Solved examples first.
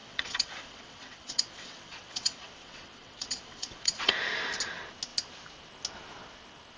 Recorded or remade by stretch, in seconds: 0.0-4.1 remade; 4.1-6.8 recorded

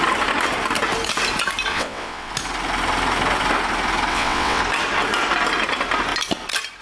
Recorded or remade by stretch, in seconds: 0.0-1.7 recorded; 1.7-2.3 remade; 2.3-4.1 recorded; 4.1-4.6 remade; 4.6-6.8 recorded

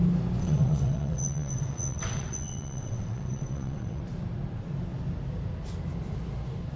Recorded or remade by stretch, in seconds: 0.0-0.4 recorded; 0.4-4.0 remade; 4.0-6.8 recorded